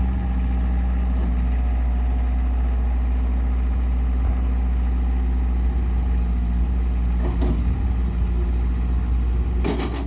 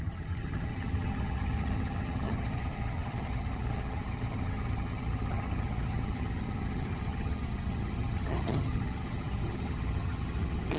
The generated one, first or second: second